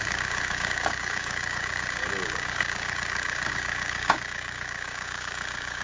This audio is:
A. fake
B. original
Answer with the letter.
A